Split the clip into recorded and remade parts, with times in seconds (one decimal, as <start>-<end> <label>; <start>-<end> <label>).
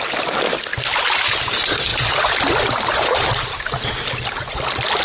0.0-1.9 recorded; 1.9-5.0 remade